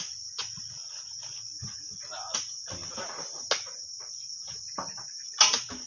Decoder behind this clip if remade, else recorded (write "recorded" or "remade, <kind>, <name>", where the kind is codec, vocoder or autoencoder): recorded